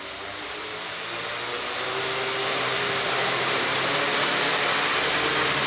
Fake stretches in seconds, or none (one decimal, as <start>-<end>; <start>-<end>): 2.5-4.0